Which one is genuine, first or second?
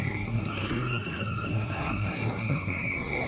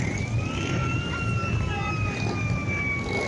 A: second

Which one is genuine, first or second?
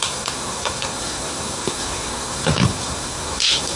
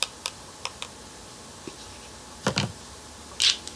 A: second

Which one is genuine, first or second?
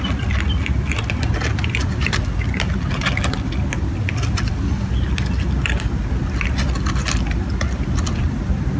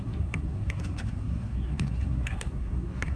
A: first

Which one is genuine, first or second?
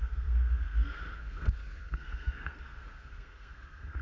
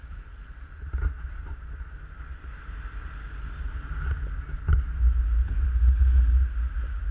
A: second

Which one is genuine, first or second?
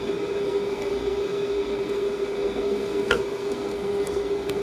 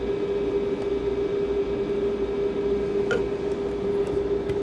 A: second